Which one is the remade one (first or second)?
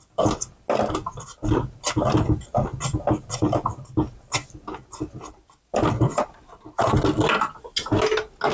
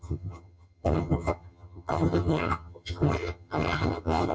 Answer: second